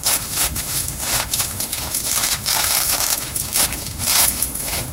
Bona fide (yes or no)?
no